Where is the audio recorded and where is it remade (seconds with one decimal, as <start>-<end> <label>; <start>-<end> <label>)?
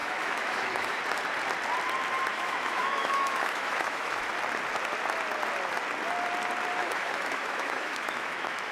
0.0-1.0 remade; 1.0-2.3 recorded; 2.3-4.3 remade; 4.3-6.8 recorded; 6.8-8.7 remade